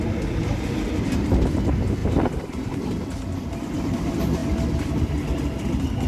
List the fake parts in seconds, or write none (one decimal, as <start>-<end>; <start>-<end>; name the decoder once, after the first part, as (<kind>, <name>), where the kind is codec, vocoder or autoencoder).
2.0-2.9 (vocoder, BigVGAN v2)